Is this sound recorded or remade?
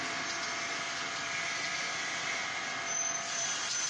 recorded